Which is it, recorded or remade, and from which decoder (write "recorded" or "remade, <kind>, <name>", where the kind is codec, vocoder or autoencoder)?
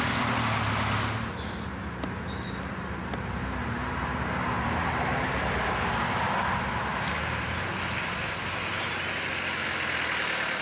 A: recorded